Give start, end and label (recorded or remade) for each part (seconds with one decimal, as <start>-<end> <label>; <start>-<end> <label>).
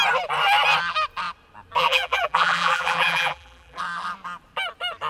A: 0.0-1.8 recorded; 1.8-3.8 remade; 3.8-5.1 recorded